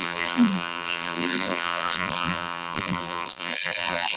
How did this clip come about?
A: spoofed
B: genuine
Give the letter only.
A